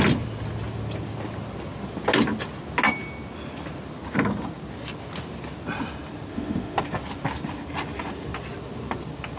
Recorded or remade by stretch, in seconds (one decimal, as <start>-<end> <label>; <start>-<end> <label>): 0.0-6.3 recorded; 6.3-6.8 remade; 6.8-9.4 recorded